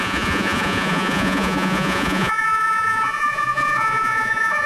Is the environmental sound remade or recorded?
remade